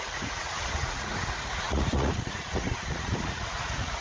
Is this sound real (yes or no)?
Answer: no